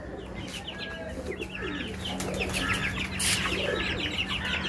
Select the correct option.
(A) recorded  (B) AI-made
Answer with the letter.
A